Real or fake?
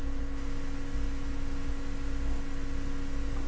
real